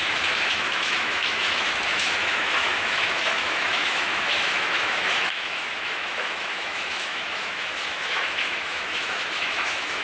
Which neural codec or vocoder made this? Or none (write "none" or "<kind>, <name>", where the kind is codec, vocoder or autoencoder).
autoencoder, DAC-VAE